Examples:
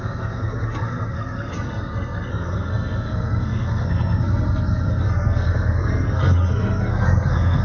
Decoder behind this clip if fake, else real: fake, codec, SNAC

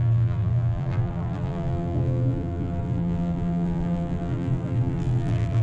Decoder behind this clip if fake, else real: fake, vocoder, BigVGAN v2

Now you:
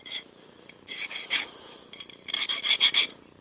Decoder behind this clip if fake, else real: fake, vocoder, BigVGAN v2